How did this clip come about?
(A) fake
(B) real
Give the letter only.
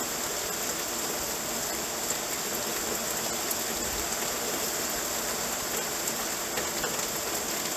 B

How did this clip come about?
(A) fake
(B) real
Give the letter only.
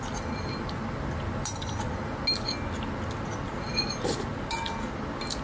B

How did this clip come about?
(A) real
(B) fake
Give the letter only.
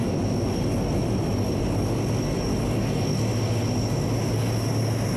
A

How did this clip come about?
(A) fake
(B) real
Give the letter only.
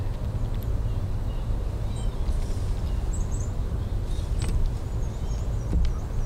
B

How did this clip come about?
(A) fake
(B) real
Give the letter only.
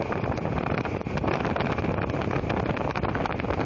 B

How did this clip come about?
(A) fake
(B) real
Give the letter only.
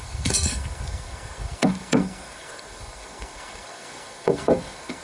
A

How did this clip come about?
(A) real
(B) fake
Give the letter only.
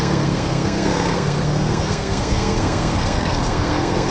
B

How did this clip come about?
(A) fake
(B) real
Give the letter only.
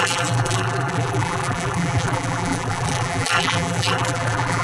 A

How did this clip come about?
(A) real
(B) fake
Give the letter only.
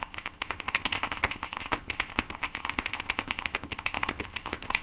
B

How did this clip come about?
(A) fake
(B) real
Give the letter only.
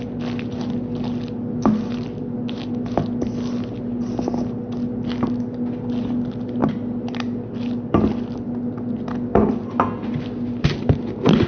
B